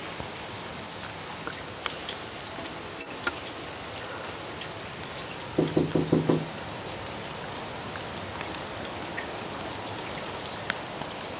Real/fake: real